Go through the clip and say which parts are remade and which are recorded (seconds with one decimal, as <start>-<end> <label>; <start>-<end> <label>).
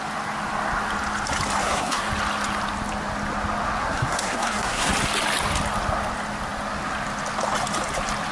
0.0-1.6 recorded; 1.6-2.1 remade; 2.1-3.8 recorded; 3.8-4.9 remade; 4.9-8.3 recorded